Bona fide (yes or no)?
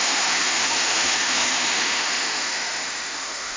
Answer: no